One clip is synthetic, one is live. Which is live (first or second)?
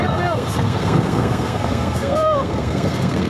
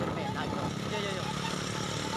second